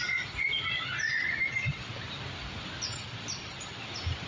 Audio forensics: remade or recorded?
recorded